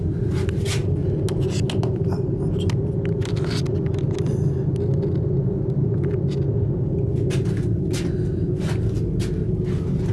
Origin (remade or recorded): recorded